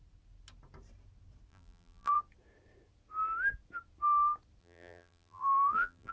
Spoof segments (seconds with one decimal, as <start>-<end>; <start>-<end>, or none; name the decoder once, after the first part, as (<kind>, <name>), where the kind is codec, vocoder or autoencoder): 1.5-2.2 (vocoder, BigVGAN v2); 4.6-6.1